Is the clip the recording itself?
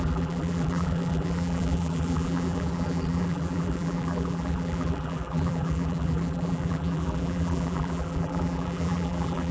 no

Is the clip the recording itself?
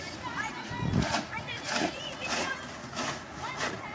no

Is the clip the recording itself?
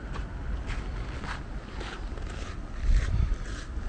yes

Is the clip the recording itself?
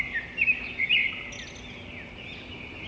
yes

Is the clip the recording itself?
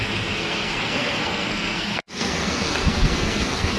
no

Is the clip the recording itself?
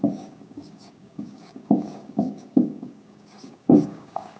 no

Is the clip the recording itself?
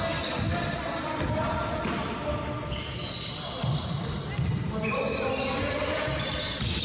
yes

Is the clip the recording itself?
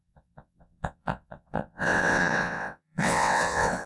no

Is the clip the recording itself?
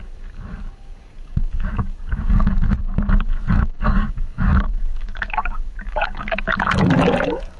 no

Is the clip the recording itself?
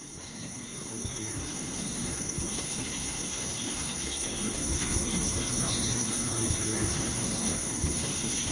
no